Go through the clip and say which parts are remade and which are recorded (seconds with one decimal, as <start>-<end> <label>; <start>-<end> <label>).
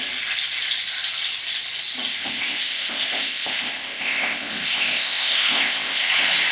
0.0-2.2 recorded; 2.2-6.1 remade; 6.1-6.5 recorded